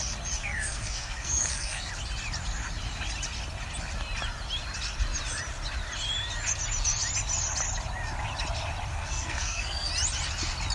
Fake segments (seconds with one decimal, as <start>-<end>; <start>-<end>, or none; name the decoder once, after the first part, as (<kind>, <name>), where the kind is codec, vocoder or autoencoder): 0.4-1.9 (codec, SNAC); 8.9-9.9